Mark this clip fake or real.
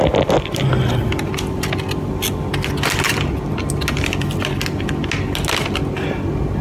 real